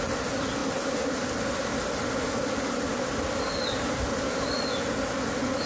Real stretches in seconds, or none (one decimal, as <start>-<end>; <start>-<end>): 0.0-5.7